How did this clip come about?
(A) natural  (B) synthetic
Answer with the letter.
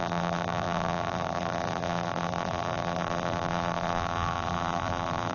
B